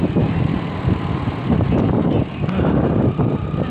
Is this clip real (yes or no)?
yes